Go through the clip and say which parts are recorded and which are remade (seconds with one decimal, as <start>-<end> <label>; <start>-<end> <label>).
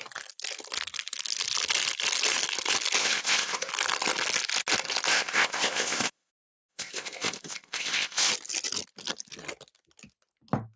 0.0-3.0 recorded; 3.0-3.7 remade; 3.7-5.1 recorded; 5.1-6.3 remade; 6.3-6.7 recorded; 6.7-8.3 remade; 8.3-10.8 recorded